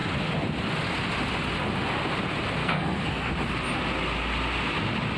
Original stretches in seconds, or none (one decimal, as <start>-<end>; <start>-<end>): 0.0-2.6; 3.3-5.2